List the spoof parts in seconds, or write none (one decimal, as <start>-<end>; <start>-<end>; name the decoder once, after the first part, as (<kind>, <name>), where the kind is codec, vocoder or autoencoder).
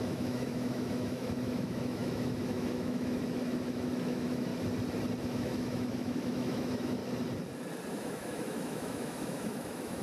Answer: 0.0-4.5 (autoencoder, DAC-VAE); 5.2-7.0; 7.9-10.0